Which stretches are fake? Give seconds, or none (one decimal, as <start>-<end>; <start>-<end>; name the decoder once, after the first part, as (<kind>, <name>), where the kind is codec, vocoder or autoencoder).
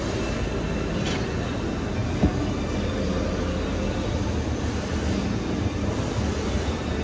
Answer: none